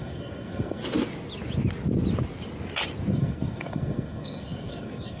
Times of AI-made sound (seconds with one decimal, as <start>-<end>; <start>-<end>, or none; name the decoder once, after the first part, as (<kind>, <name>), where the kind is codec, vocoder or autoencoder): 0.0-0.8 (codec, SNAC); 3.1-5.2